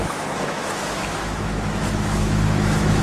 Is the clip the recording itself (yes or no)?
no